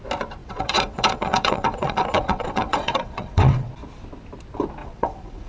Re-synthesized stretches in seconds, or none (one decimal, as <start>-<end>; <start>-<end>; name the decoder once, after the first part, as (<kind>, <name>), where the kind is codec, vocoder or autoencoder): 0.4-3.7 (vocoder, WaveNeXt); 4.8-5.5